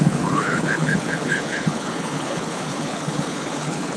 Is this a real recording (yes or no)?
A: no